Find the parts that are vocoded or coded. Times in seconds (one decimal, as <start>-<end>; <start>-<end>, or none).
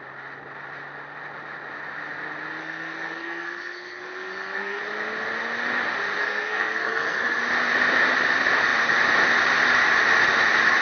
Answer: 2.6-4.8; 6.2-7.2